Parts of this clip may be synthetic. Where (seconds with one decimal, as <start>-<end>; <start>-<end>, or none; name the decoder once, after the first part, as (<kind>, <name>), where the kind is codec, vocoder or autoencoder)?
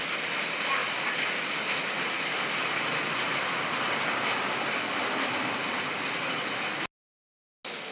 none